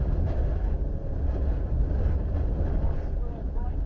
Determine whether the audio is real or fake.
real